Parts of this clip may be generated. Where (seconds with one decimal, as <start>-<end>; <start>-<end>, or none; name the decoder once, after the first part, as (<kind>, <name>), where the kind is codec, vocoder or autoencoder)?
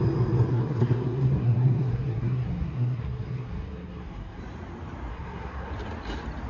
0.5-4.4 (codec, SNAC); 5.1-5.7